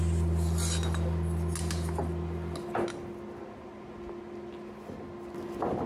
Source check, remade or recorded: recorded